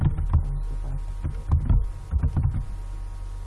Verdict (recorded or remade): recorded